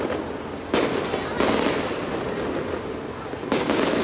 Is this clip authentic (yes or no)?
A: yes